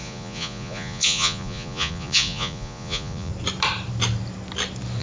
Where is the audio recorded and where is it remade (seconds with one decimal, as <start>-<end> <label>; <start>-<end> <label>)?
0.0-3.3 remade; 3.3-5.0 recorded

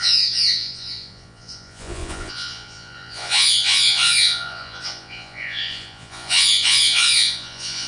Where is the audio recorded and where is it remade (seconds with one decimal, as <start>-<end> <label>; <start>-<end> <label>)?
0.0-7.9 remade

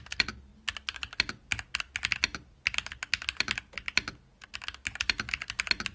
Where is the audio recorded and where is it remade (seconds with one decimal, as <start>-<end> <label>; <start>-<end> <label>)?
0.0-5.9 recorded